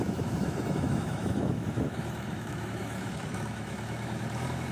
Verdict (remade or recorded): remade